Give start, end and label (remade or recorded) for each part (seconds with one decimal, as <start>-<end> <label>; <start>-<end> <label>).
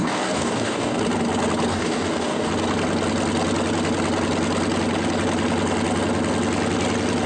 0.0-1.0 remade; 1.0-1.7 recorded; 1.7-2.5 remade; 2.5-7.3 recorded